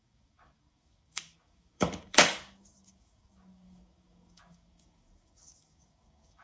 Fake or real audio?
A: fake